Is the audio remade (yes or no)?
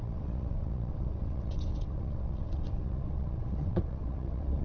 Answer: yes